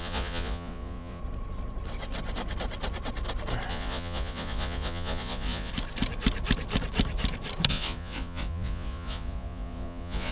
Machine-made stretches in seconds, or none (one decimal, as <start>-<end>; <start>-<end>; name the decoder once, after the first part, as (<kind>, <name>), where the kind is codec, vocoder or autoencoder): 0.0-1.2 (vocoder, Vocos); 3.7-5.7; 7.7-10.3